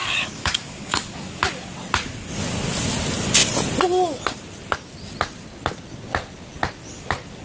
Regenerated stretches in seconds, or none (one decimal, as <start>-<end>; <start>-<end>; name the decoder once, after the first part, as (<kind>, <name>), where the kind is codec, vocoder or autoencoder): 0.0-1.4 (codec, DAC)